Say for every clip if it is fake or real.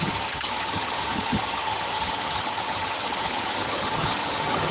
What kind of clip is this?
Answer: fake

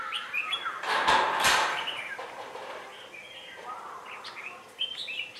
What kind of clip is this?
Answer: fake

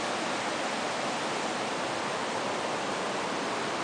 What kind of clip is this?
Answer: real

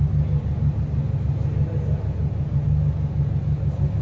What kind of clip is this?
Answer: real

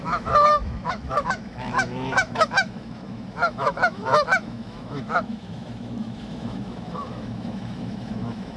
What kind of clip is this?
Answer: fake